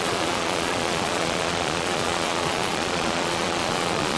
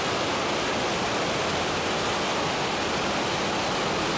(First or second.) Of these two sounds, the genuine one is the second